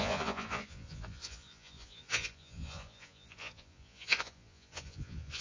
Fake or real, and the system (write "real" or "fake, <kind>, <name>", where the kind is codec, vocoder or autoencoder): fake, vocoder, Vocos